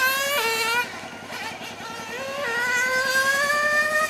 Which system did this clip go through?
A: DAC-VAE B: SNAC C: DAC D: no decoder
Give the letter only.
D